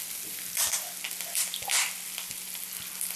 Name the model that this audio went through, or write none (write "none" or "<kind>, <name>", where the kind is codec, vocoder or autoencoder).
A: none